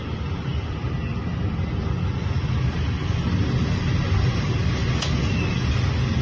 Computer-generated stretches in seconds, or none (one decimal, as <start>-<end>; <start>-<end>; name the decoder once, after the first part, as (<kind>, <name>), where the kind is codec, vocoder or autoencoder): none